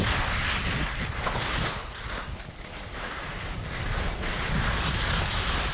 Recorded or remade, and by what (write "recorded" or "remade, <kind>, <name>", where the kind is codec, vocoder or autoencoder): recorded